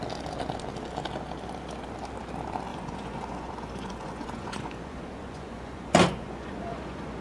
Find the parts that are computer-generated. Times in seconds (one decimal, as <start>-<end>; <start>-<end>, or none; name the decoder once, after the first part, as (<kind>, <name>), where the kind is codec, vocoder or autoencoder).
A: 2.7-7.2 (vocoder, Vocos)